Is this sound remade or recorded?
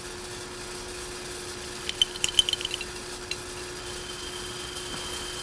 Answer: recorded